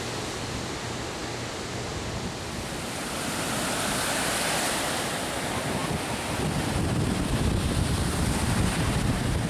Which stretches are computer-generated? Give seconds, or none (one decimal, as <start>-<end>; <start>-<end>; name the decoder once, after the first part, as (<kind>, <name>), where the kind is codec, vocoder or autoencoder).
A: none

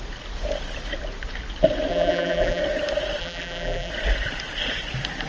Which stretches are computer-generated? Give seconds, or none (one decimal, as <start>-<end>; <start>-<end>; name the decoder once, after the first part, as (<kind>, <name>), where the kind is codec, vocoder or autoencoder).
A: 1.9-2.6 (vocoder, BigVGAN v2); 3.2-3.9

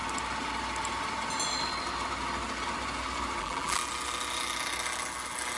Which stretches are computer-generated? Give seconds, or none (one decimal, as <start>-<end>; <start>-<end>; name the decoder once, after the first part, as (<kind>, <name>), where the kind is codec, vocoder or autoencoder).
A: 3.4-3.8 (vocoder, BigVGAN v2)

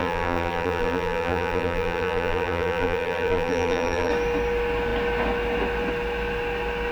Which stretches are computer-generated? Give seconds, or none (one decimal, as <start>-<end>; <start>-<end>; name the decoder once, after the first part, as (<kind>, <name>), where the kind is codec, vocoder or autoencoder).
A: 0.0-4.1 (vocoder, BigVGAN v2)

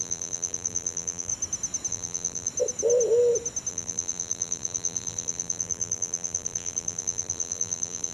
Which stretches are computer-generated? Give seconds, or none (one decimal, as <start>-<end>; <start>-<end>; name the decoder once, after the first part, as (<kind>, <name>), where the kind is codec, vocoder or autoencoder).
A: 0.0-1.3 (vocoder, BigVGAN v2); 1.9-2.5; 3.7-8.1

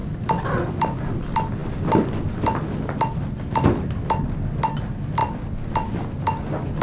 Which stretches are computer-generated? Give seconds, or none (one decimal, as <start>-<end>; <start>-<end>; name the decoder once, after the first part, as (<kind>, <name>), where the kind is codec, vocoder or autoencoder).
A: none

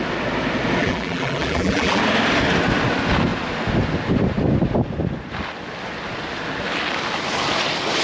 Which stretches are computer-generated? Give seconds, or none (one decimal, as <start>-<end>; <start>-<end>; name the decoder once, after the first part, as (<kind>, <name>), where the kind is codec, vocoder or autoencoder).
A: 0.8-2.0 (vocoder, BigVGAN v2)

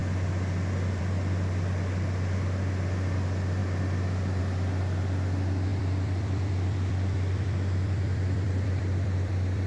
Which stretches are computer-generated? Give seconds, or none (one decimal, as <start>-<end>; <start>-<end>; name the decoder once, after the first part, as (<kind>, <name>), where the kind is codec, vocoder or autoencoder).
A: 5.7-9.7 (vocoder, BigVGAN v2)